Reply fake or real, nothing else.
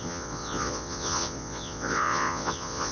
fake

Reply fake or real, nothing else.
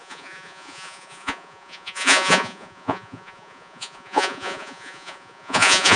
fake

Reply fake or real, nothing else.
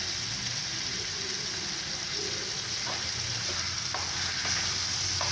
real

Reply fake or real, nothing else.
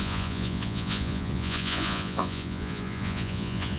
fake